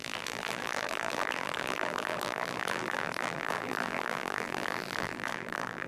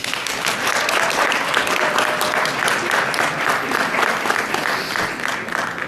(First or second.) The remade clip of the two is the first